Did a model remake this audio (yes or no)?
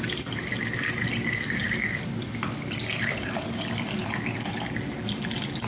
no